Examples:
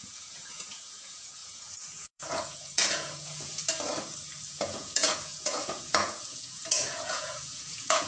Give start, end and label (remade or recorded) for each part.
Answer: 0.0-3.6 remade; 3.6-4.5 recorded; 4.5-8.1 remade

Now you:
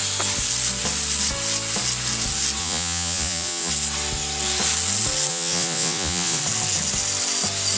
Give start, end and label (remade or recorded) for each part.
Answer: 0.0-2.6 recorded; 2.6-3.7 remade; 3.7-5.3 recorded; 5.3-6.4 remade; 6.4-7.8 recorded

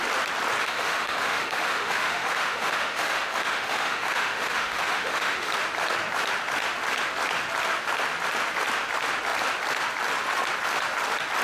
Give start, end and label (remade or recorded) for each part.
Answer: 0.0-0.6 recorded; 0.6-5.5 remade; 5.5-11.4 recorded

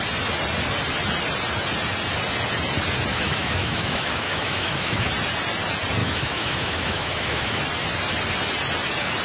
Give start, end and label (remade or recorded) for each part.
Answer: 0.0-3.1 recorded; 3.1-5.1 remade; 5.1-6.0 recorded; 6.0-7.6 remade; 7.6-9.2 recorded

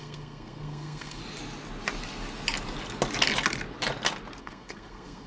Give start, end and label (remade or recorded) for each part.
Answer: 0.0-1.2 remade; 1.2-4.4 recorded; 4.4-5.3 remade

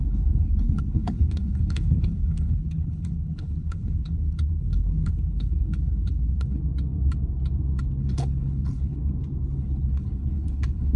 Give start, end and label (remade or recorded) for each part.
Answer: 0.0-6.6 remade; 6.6-8.0 recorded; 8.0-9.0 remade; 9.0-9.6 recorded; 9.6-11.0 remade

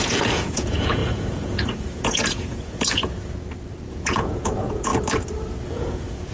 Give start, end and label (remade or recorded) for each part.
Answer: 0.0-3.0 remade; 3.0-3.9 recorded; 3.9-4.9 remade; 4.9-5.7 recorded; 5.7-6.3 remade

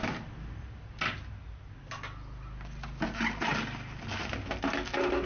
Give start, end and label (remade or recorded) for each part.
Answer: 0.0-5.3 recorded